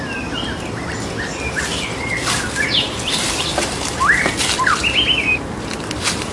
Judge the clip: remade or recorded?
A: recorded